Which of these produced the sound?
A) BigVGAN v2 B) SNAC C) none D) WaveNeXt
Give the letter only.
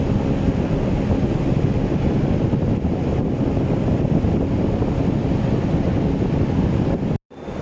C